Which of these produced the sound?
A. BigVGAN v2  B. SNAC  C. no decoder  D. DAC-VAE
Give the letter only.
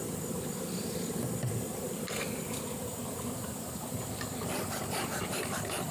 C